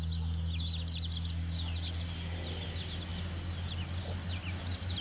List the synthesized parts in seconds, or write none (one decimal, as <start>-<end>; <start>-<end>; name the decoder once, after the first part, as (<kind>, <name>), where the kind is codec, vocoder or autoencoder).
none